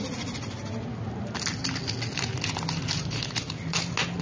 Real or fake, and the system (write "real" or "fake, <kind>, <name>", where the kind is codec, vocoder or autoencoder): real